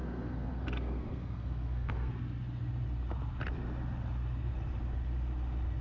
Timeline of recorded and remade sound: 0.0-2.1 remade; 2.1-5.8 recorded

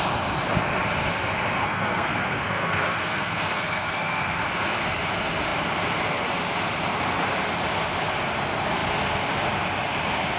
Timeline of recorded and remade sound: 0.0-1.6 recorded; 1.6-4.4 remade; 4.4-10.4 recorded

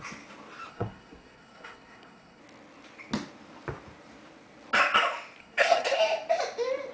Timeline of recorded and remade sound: 0.0-0.7 recorded; 0.7-2.4 remade; 2.4-5.4 recorded; 5.4-6.0 remade; 6.0-6.9 recorded

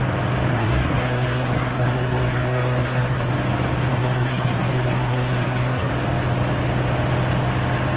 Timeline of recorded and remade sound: 0.0-0.5 recorded; 0.5-3.3 remade; 3.3-3.9 recorded; 3.9-5.9 remade; 5.9-8.0 recorded

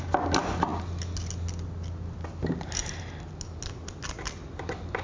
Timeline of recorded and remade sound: 0.0-5.0 recorded

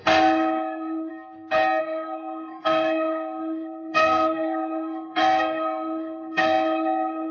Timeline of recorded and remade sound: 0.0-1.1 remade; 1.1-1.8 recorded; 1.8-7.3 remade